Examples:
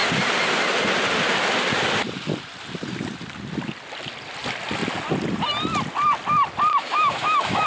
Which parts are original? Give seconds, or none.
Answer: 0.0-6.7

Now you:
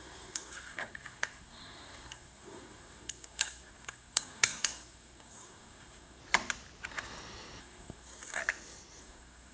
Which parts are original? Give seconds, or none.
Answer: 6.2-7.6; 8.4-9.0